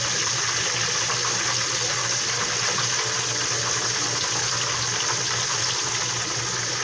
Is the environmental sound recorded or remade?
recorded